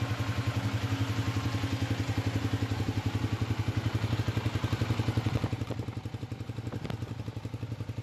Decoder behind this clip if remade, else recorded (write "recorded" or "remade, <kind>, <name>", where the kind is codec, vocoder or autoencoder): recorded